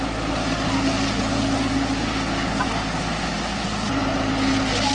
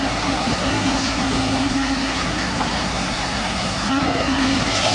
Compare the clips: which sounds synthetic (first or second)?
second